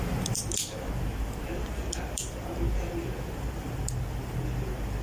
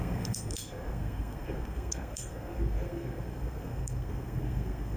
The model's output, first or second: second